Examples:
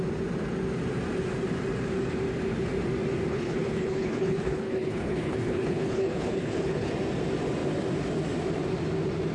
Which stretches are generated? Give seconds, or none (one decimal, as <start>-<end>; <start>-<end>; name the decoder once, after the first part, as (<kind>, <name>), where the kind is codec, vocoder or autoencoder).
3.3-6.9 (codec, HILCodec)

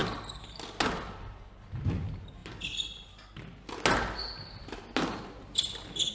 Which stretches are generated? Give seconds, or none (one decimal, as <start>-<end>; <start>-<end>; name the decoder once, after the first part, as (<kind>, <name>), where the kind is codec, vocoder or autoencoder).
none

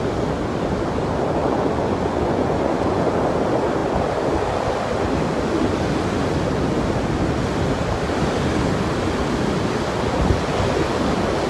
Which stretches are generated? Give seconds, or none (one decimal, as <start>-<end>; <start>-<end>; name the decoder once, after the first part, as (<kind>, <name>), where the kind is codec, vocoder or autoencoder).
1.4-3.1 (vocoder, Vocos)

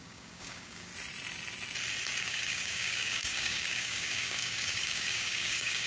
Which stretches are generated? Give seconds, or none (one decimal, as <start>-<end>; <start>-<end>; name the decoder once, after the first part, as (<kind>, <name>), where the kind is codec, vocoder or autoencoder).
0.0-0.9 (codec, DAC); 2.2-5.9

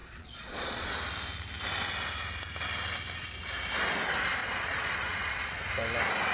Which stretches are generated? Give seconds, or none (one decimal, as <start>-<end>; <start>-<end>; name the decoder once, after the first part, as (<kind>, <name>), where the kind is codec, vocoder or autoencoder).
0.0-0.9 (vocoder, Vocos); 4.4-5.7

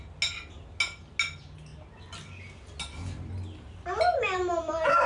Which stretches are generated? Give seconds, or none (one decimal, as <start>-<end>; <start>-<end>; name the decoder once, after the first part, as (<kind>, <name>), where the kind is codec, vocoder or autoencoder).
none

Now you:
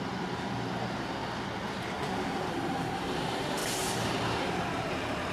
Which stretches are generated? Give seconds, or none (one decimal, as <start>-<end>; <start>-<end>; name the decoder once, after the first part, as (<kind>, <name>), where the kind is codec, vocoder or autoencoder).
0.0-1.2 (vocoder, BigVGAN v2); 2.5-5.3